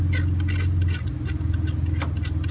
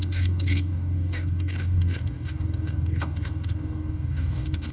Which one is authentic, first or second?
first